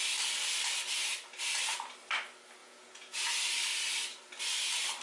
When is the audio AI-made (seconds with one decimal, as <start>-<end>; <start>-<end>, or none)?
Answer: 2.6-3.3